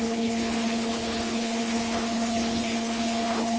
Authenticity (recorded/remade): remade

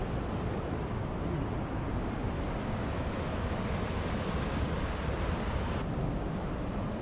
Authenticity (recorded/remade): recorded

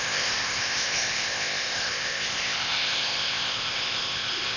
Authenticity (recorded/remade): remade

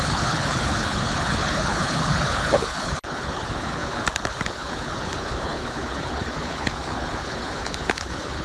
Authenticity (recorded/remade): remade